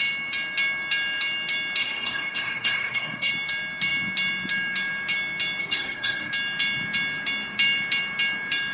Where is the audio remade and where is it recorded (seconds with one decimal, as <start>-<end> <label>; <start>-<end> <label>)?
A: 0.0-1.8 recorded; 1.8-3.3 remade; 3.3-5.6 recorded; 5.6-6.3 remade; 6.3-8.7 recorded